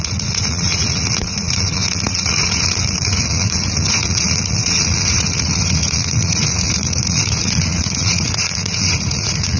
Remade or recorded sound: remade